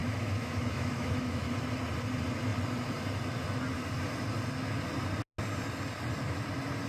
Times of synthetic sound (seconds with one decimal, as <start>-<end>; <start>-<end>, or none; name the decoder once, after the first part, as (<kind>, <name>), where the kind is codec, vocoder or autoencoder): 0.0-1.5 (autoencoder, DAC-VAE)